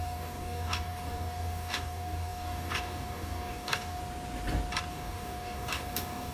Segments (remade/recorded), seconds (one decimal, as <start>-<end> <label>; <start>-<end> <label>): 0.0-4.0 remade; 4.0-4.9 recorded; 4.9-6.3 remade